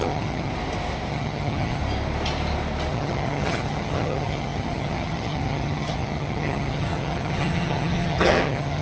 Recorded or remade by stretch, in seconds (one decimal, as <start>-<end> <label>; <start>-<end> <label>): 0.0-0.5 remade; 0.5-1.1 recorded; 1.1-1.8 remade; 1.8-2.9 recorded; 2.9-8.8 remade